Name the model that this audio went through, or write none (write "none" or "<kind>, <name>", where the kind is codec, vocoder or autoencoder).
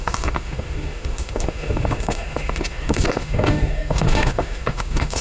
autoencoder, DAC-VAE